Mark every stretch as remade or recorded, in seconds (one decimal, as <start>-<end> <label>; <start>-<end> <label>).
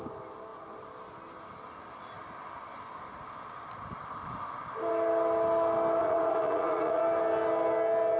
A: 0.0-6.0 recorded; 6.0-7.0 remade; 7.0-8.2 recorded